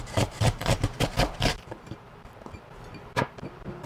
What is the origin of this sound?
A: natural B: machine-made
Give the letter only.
B